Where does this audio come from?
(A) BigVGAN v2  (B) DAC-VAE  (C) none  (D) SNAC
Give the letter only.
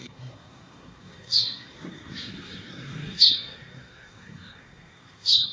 D